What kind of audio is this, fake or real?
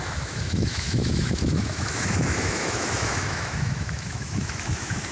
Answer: fake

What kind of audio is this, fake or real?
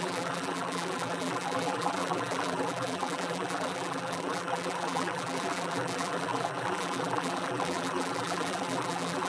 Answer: fake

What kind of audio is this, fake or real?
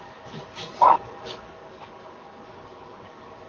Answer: fake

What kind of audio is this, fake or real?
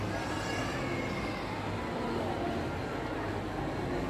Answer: real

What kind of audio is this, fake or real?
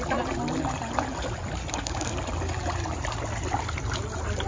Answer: real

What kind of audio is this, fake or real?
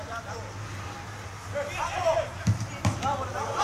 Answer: real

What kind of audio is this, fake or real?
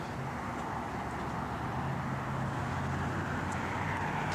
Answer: real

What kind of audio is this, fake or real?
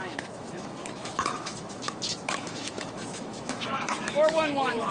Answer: fake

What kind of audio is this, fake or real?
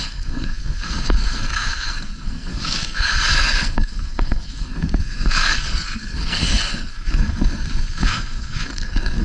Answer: fake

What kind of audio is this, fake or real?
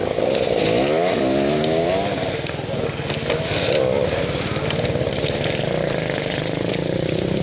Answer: real